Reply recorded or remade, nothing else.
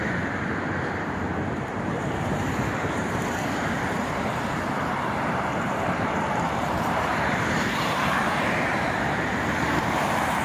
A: remade